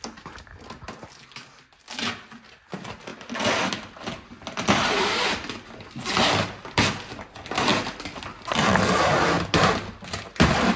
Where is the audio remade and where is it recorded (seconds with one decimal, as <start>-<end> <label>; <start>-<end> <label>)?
0.0-10.8 recorded